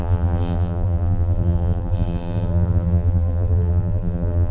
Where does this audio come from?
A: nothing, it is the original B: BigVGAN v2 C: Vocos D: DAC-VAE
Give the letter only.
B